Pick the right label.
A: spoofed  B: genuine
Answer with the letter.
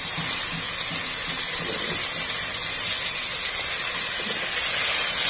B